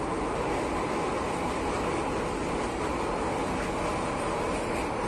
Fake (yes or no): no